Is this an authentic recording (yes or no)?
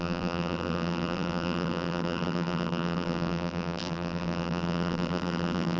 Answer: no